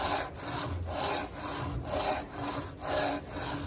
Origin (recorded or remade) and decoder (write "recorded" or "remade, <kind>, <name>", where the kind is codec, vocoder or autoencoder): recorded